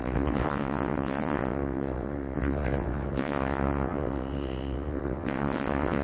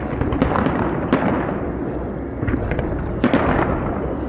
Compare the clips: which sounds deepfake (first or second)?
first